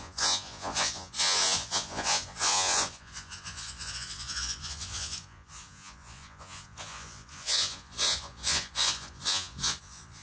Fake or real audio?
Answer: fake